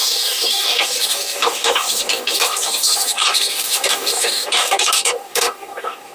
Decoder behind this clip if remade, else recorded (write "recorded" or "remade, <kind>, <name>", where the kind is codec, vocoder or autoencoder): remade, codec, DAC